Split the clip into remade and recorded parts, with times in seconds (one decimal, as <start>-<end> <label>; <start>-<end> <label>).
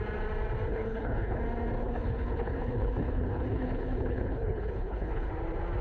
0.0-0.7 recorded; 0.7-1.4 remade; 1.4-1.8 recorded; 1.8-5.3 remade; 5.3-5.8 recorded